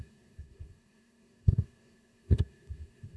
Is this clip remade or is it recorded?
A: remade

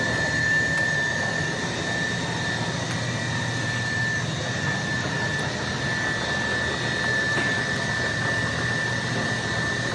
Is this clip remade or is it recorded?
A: recorded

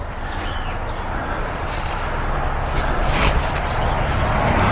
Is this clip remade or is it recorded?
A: recorded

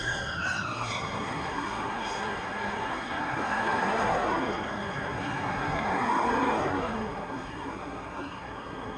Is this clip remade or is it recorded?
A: remade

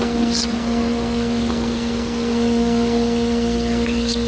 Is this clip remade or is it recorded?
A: remade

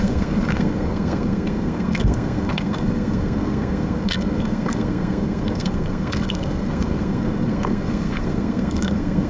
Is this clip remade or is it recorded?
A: remade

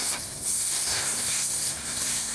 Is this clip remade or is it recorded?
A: remade